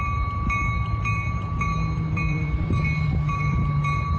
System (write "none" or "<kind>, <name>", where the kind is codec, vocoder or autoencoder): vocoder, BigVGAN v2